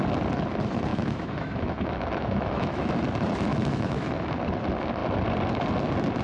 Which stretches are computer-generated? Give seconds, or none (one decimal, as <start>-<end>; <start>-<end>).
0.9-2.9; 3.5-4.3